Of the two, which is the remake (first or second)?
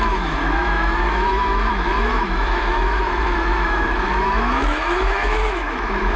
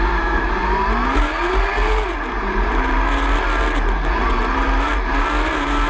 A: first